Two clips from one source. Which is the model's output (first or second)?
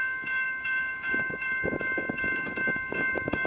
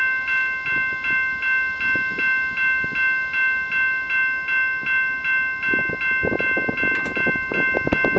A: first